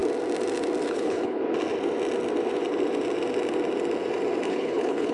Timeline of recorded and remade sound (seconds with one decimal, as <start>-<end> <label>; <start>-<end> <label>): 0.0-0.9 recorded; 0.9-1.4 remade; 1.4-4.5 recorded; 4.5-5.1 remade